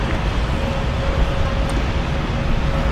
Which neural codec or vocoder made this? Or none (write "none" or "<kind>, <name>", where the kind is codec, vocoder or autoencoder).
none